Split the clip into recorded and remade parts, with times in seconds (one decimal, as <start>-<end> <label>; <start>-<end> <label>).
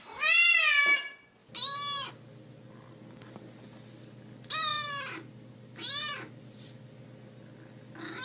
0.0-8.2 recorded